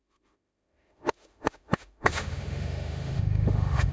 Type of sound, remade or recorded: remade